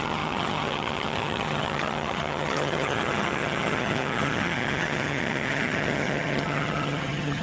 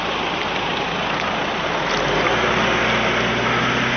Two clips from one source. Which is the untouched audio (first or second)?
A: second